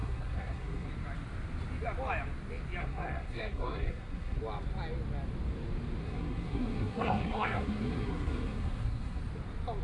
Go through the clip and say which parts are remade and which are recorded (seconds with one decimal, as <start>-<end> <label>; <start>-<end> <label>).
0.0-0.9 remade; 0.9-2.8 recorded; 2.8-4.4 remade; 4.4-6.0 recorded; 6.0-9.2 remade; 9.2-9.8 recorded

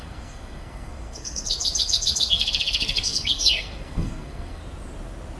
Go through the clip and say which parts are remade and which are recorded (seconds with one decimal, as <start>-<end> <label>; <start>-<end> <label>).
0.0-4.6 remade; 4.6-5.4 recorded

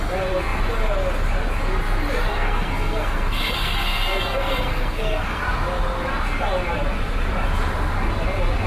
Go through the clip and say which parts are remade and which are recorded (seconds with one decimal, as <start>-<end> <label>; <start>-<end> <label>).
0.0-2.3 recorded; 2.3-5.4 remade; 5.4-8.7 recorded